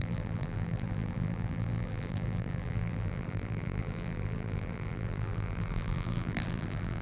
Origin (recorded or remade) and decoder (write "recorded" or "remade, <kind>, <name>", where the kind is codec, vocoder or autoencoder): remade, vocoder, BigVGAN v2